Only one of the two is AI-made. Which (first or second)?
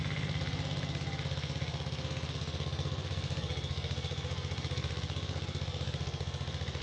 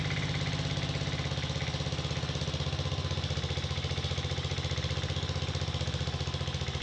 first